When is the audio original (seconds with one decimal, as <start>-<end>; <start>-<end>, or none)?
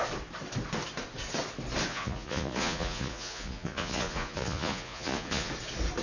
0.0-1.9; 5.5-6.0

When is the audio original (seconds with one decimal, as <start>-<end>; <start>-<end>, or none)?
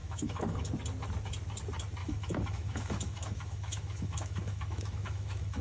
0.7-2.0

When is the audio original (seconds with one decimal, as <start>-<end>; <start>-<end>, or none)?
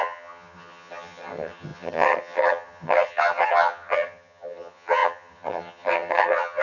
none